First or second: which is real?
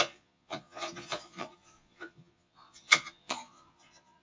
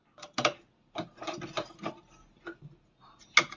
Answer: second